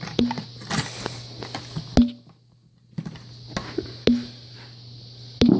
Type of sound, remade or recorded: recorded